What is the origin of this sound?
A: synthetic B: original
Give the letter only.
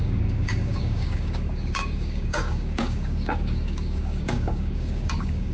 A